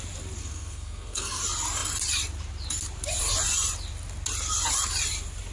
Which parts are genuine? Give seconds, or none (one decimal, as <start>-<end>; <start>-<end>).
0.0-0.4; 1.4-5.5